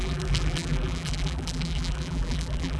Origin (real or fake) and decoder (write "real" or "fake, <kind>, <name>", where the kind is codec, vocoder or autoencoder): fake, vocoder, BigVGAN v2